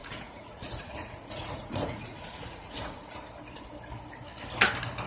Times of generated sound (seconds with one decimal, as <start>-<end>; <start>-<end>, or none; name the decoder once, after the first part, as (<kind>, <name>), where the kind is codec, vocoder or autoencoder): 0.0-3.1 (vocoder, Vocos)